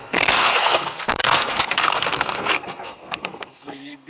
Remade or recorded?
remade